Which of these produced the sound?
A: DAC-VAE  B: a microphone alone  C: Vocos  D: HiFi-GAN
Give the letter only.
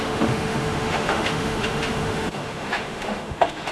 A